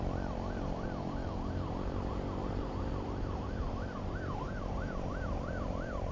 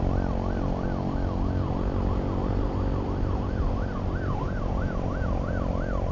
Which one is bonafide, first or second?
second